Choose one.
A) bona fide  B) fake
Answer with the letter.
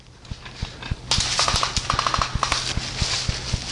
A